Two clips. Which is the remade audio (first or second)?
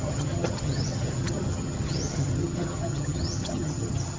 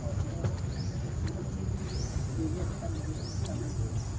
first